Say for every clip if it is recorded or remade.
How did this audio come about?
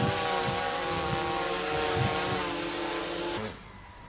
recorded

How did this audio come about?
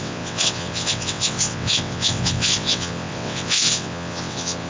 remade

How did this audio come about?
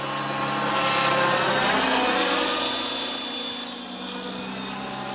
recorded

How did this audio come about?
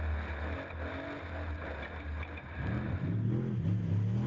recorded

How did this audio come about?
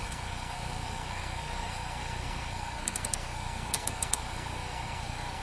remade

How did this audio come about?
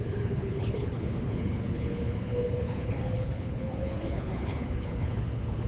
remade